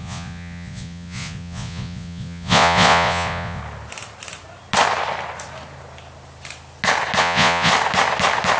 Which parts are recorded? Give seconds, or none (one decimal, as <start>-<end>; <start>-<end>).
3.6-7.2; 7.7-8.6